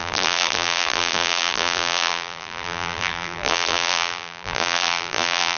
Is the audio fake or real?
fake